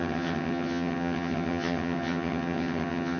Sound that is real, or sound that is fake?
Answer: fake